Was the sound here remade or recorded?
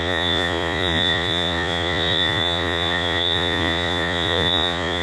remade